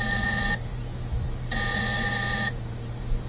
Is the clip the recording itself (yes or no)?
no